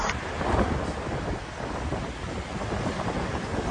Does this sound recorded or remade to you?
recorded